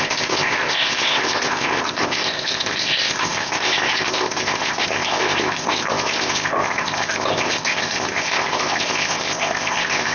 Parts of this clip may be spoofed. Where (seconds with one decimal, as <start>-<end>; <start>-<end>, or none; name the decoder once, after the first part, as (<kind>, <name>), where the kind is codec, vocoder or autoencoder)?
0.0-10.1 (codec, ZipCodec)